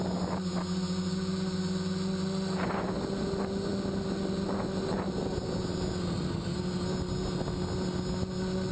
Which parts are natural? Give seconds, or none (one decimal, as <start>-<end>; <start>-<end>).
0.0-8.7

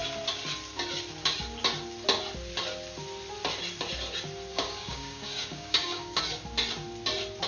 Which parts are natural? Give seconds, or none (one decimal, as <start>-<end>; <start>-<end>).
0.0-4.5; 6.2-7.5

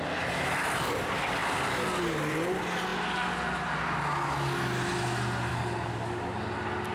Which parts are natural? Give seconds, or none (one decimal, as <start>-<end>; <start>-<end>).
0.0-5.5; 6.4-6.9

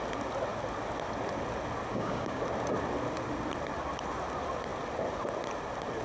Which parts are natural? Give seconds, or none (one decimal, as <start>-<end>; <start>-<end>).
0.0-1.9; 2.4-6.0

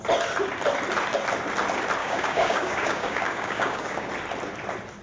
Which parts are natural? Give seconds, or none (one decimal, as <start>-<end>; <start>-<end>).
0.0-2.0; 4.1-5.0

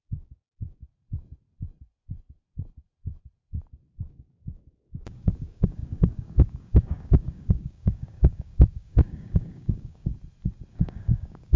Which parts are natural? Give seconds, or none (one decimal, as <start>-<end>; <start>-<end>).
0.8-3.9; 10.1-10.7

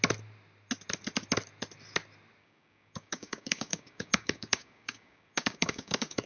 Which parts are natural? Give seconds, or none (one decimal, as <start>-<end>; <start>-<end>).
0.0-2.4